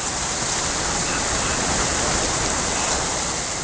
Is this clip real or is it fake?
real